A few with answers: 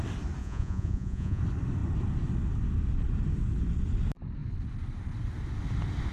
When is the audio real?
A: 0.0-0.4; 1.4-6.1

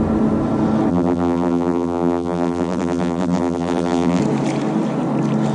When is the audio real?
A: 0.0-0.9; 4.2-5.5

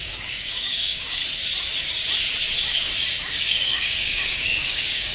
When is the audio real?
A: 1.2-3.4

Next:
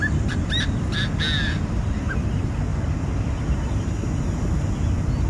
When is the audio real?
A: 0.0-5.3

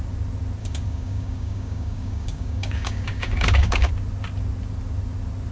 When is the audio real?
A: 0.0-0.6; 3.9-5.5

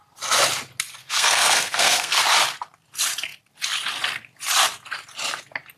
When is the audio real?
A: 0.0-1.0; 2.2-5.8